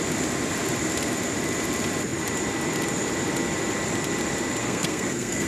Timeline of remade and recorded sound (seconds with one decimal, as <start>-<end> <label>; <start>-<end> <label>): 0.0-4.6 recorded; 4.6-5.5 remade